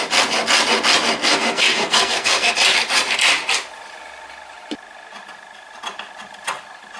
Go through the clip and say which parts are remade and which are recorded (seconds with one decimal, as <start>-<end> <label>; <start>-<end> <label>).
0.0-1.2 recorded; 1.2-2.5 remade; 2.5-7.0 recorded